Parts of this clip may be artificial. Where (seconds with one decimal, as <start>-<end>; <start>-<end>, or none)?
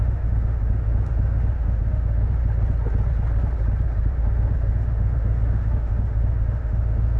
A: 0.0-2.4; 4.1-7.2